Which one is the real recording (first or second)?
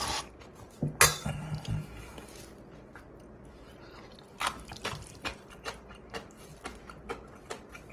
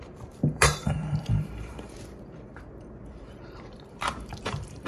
first